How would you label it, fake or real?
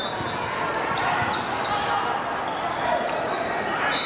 real